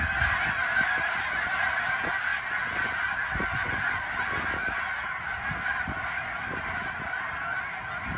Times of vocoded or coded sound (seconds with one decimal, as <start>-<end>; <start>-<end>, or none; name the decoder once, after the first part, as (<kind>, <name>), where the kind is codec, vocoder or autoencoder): 0.6-1.5 (vocoder, BigVGAN v2); 5.3-6.8

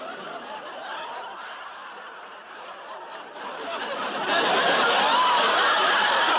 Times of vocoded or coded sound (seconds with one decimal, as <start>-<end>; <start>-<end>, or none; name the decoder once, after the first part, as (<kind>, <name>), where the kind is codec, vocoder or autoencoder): 0.8-1.7 (vocoder, BigVGAN v2); 2.4-6.4

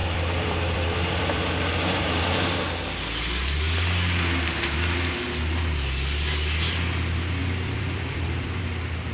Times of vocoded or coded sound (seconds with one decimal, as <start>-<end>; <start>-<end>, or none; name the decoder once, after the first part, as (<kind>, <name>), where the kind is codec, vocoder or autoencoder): 0.0-1.2 (vocoder, BigVGAN v2); 7.4-8.6